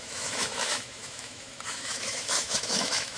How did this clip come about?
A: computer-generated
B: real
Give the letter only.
A